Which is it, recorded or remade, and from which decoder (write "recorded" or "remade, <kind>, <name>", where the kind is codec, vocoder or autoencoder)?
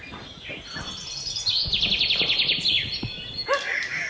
recorded